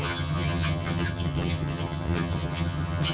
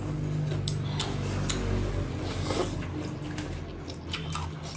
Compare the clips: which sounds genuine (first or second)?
second